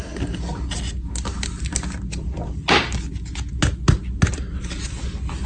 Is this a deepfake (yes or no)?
no